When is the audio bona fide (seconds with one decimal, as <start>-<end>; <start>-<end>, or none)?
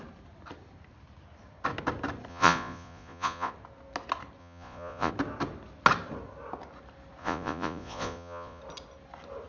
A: 0.0-2.3; 3.5-4.4; 5.1-7.2; 8.6-9.5